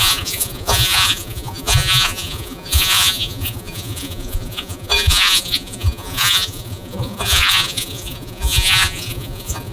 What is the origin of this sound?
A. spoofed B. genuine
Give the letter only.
A